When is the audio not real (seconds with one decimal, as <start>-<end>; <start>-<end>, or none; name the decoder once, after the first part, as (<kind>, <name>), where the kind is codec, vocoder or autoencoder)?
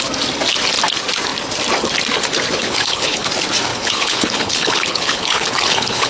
2.6-3.3 (codec, HILCodec); 3.7-6.1